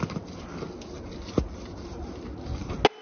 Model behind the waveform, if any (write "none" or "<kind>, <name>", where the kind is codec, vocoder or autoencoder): none